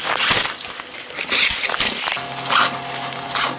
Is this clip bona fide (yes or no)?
yes